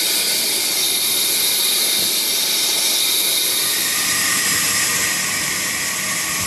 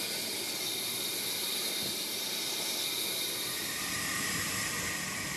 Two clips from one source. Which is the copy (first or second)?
second